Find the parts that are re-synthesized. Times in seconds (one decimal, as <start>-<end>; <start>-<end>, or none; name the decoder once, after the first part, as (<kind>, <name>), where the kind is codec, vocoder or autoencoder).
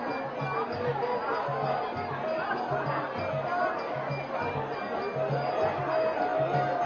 none